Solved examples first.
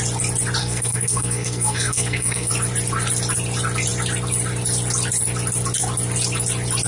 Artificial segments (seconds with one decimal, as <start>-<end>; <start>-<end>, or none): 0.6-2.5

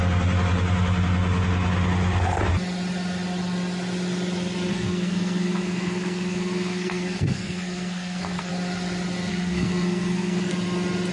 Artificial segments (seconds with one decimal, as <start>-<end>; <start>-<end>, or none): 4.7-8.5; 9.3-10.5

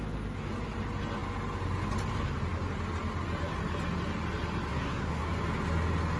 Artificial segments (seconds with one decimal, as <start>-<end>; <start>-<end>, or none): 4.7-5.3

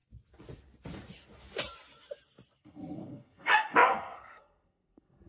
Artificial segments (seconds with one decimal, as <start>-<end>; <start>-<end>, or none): 2.6-5.3

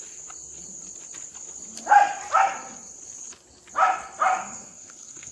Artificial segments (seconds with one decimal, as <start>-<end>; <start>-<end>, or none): 4.4-5.3